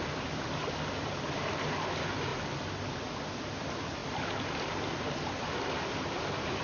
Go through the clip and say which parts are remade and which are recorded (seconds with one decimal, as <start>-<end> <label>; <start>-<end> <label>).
0.0-6.6 recorded